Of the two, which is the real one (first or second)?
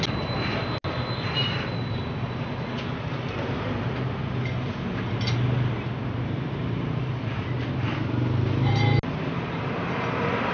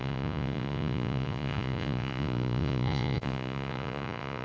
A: first